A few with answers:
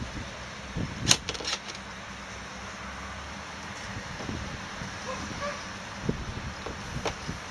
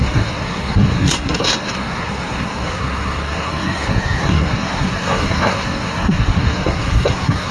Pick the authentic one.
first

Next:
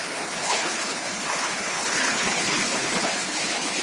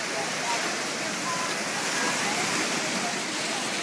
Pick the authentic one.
second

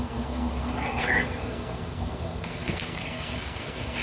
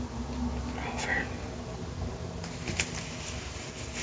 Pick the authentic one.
second